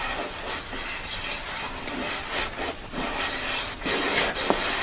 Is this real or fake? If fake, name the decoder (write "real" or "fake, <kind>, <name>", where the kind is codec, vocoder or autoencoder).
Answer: real